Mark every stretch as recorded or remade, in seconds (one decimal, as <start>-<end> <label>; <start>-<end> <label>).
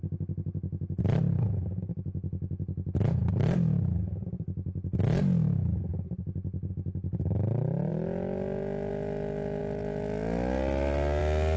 0.0-11.6 recorded